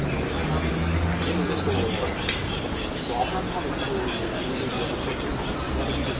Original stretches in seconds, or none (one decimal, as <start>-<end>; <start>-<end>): 0.4-4.1; 5.1-6.2